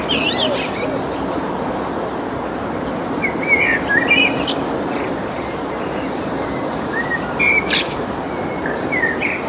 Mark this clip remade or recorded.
recorded